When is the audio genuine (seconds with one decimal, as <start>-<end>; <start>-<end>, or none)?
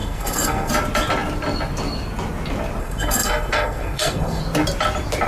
0.7-2.8; 4.4-5.3